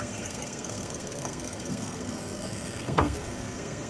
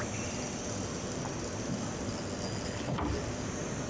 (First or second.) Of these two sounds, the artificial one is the first